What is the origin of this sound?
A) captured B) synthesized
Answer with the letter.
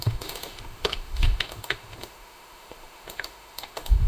B